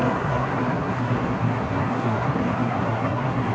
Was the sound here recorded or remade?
remade